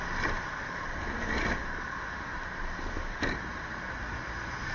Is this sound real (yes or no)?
yes